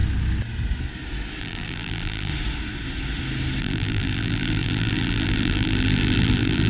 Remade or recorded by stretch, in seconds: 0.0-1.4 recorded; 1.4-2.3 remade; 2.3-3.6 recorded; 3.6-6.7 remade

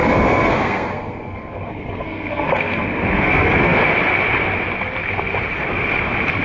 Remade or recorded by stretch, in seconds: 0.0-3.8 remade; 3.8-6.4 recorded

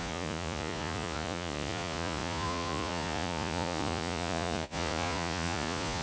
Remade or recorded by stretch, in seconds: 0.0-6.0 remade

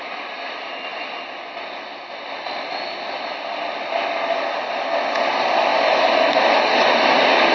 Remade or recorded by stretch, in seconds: 0.0-5.7 recorded; 5.7-6.6 remade; 6.6-7.5 recorded

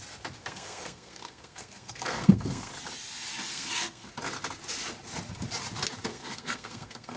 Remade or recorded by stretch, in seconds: 0.0-0.4 recorded; 0.4-2.7 remade; 2.7-3.5 recorded; 3.5-4.1 remade; 4.1-6.1 recorded; 6.1-7.2 remade

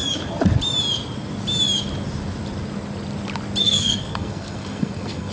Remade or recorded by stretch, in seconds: 0.0-3.6 recorded; 3.6-5.3 remade

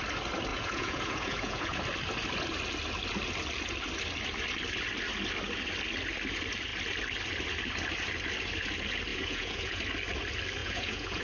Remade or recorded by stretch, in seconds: 0.0-0.5 recorded; 0.5-1.8 remade; 1.8-9.1 recorded; 9.1-9.8 remade; 9.8-10.6 recorded; 10.6-11.2 remade

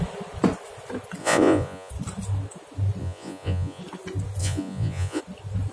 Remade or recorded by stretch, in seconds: 0.0-1.2 recorded; 1.2-1.9 remade; 1.9-3.0 recorded; 3.0-3.8 remade; 3.8-4.4 recorded; 4.4-5.2 remade; 5.2-5.7 recorded